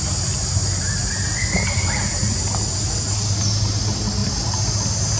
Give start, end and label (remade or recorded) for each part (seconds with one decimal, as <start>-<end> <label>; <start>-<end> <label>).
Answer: 0.0-5.2 recorded